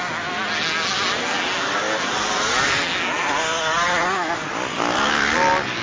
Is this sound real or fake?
real